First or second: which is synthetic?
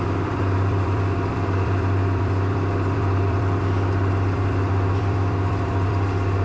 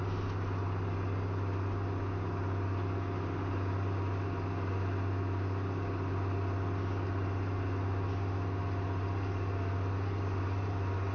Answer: first